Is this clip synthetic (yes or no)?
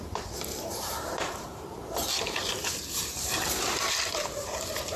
yes